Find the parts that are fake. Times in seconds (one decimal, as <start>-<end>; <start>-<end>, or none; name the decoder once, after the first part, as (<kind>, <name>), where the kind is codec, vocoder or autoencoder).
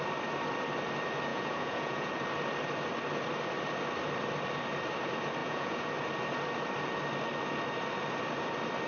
1.3-2.1 (vocoder, Vocos); 5.4-5.9